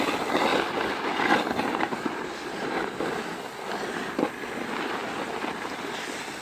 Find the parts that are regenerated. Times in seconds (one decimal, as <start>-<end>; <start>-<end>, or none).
none

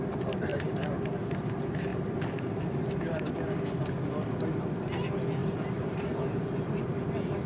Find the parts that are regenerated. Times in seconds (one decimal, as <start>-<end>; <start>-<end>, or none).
0.5-1.0; 1.9-3.3; 5.4-6.8